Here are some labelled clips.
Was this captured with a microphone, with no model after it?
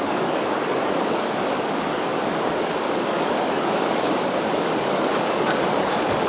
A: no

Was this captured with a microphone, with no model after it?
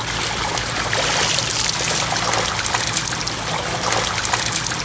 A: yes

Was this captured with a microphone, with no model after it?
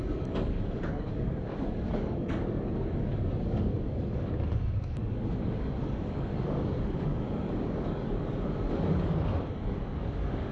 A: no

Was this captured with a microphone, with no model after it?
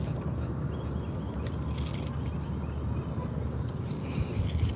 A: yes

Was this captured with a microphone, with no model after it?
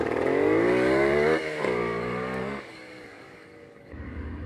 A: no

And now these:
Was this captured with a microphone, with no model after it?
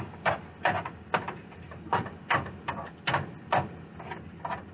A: yes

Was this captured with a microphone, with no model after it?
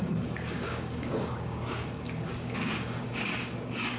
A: no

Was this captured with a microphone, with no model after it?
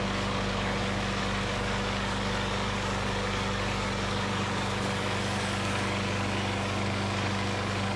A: no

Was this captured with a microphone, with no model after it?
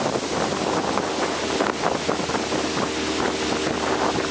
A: yes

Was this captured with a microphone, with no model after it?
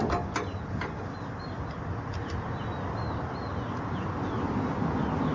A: yes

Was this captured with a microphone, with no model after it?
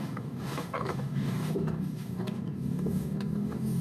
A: no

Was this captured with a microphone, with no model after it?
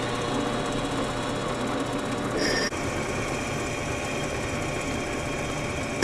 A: yes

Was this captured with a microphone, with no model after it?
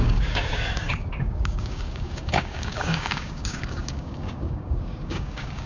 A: no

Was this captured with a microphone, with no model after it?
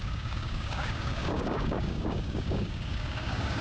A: no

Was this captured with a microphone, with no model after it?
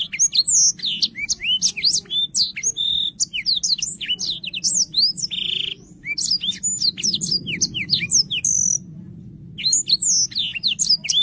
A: yes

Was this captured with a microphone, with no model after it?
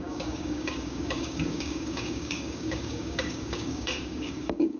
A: no